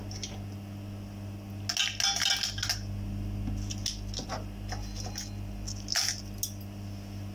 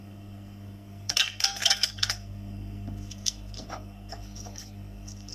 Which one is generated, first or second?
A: second